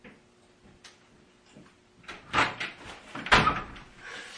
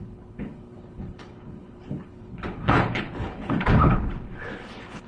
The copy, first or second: second